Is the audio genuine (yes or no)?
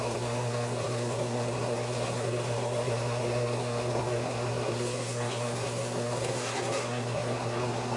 no